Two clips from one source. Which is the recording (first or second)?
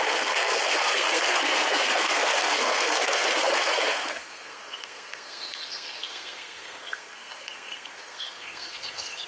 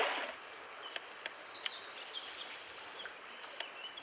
second